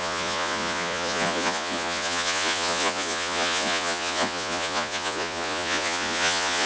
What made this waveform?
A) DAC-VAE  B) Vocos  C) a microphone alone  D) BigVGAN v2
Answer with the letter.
B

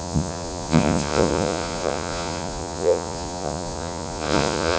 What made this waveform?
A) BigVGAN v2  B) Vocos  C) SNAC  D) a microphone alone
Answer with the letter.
B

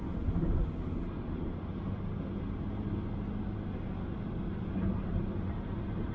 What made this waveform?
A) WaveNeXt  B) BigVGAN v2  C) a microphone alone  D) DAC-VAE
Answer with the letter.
C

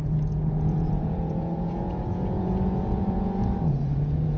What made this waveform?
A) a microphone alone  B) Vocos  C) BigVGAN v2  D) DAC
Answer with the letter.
B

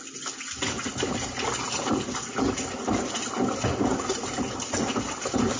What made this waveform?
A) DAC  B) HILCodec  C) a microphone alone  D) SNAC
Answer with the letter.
C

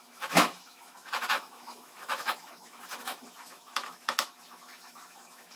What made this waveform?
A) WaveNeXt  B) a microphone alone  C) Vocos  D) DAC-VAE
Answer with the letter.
D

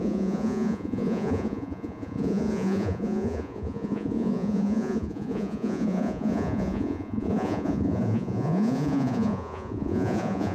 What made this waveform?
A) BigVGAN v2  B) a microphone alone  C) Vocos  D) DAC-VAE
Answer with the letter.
C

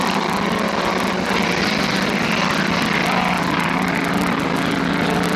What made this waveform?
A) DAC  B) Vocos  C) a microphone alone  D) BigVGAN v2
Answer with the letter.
C